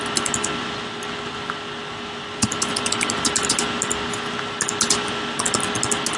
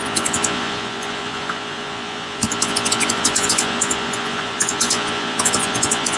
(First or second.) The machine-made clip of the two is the second